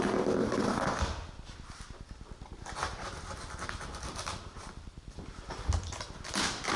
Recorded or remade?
recorded